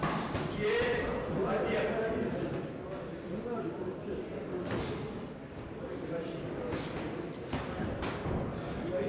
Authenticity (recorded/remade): recorded